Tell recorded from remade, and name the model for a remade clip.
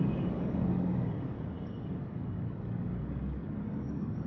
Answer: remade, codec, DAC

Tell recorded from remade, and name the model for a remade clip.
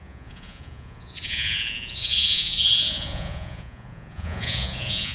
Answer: remade, vocoder, Vocos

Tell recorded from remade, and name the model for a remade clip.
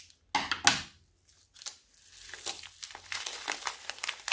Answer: recorded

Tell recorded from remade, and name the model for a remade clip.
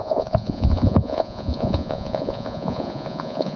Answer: remade, vocoder, Vocos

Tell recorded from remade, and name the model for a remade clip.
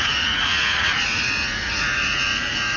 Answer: remade, vocoder, Vocos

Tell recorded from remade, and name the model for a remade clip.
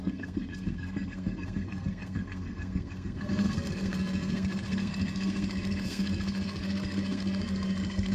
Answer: remade, codec, SNAC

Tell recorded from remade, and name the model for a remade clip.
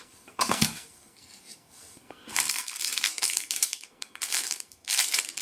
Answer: remade, codec, SNAC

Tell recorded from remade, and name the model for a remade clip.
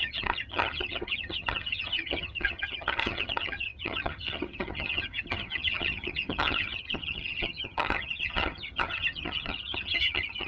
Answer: remade, vocoder, HiFi-GAN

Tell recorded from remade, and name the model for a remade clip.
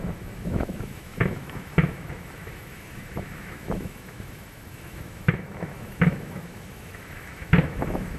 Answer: remade, autoencoder, DAC-VAE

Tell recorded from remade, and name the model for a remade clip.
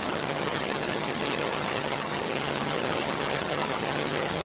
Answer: remade, vocoder, HiFi-GAN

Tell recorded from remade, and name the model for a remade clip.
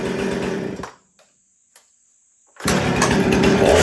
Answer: recorded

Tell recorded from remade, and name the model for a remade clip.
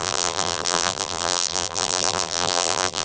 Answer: remade, vocoder, BigVGAN v2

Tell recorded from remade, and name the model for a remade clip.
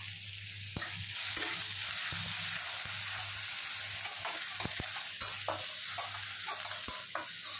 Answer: recorded